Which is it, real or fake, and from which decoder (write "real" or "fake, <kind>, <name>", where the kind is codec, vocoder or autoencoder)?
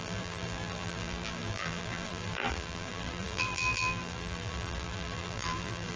fake, vocoder, BigVGAN v2